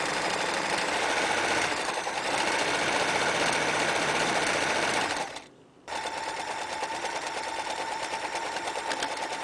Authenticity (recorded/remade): remade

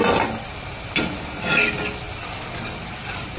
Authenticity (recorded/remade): recorded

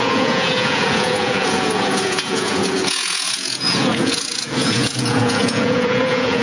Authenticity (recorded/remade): remade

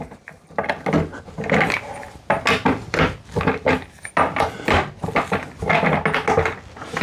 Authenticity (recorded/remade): recorded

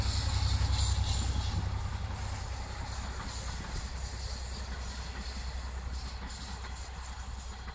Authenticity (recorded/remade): recorded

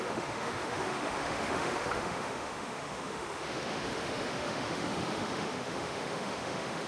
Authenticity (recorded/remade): remade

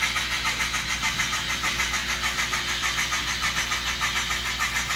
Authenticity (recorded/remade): recorded